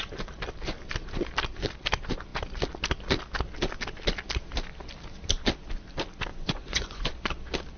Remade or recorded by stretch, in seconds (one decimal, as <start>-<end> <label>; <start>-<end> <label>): 0.0-6.3 recorded; 6.3-7.1 remade; 7.1-7.8 recorded